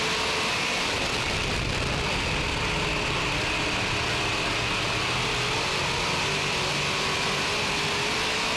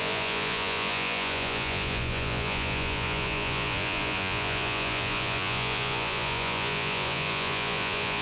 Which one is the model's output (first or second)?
second